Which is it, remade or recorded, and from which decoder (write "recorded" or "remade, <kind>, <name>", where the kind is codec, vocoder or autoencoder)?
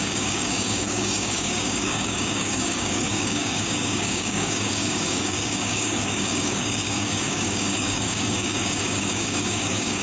remade, codec, DAC